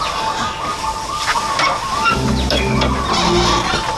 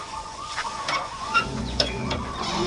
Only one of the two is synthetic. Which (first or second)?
second